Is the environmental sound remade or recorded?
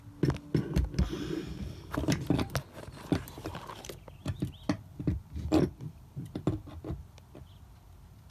recorded